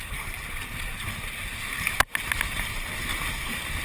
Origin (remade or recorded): recorded